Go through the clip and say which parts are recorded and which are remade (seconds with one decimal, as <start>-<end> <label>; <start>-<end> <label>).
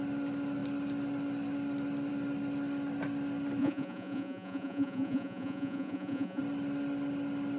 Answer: 0.0-3.6 recorded; 3.6-6.4 remade; 6.4-7.6 recorded